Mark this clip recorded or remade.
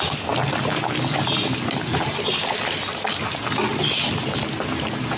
recorded